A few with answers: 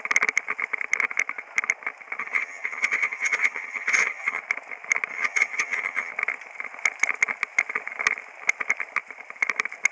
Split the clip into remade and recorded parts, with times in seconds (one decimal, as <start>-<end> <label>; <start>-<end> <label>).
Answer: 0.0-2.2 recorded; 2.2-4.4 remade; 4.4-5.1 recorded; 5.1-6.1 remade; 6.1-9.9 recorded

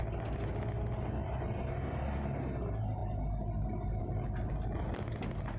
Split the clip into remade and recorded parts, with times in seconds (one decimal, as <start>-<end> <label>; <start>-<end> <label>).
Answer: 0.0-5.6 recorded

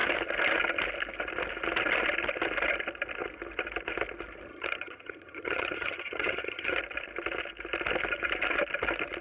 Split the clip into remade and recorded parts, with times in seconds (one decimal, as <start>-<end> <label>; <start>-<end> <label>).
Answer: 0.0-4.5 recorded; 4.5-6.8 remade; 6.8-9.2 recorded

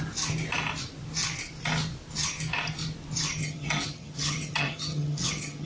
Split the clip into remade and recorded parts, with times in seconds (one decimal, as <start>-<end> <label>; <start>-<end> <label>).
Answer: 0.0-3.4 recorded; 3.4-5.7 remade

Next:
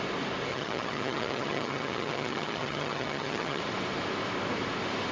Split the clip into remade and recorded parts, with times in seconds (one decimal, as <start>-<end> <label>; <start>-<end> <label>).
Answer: 0.0-0.5 recorded; 0.5-3.6 remade; 3.6-5.1 recorded

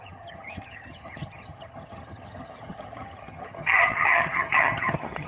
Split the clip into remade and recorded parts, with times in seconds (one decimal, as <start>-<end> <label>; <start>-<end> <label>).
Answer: 0.0-5.3 remade